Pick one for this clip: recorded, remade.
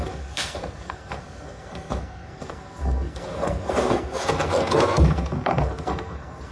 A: remade